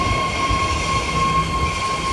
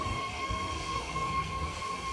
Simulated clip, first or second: second